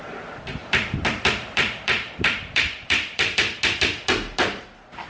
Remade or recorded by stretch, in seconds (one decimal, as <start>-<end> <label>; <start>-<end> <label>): 0.0-0.6 recorded; 0.6-3.6 remade; 3.6-5.1 recorded